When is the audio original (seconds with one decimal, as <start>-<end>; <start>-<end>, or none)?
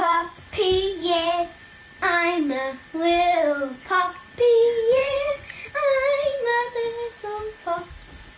1.8-4.9; 5.7-8.4